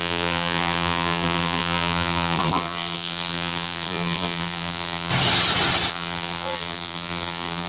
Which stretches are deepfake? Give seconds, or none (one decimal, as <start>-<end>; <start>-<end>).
0.0-5.1; 5.9-7.7